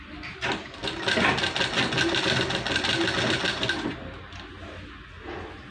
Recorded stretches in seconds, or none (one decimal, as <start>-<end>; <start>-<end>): 0.0-5.7